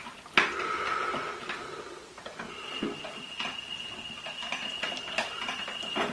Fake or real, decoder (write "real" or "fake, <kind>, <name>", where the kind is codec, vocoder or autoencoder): real